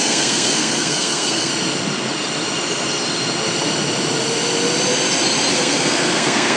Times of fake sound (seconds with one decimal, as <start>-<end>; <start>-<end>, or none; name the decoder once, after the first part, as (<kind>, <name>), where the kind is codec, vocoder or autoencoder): 0.0-1.5 (codec, SNAC); 5.5-6.6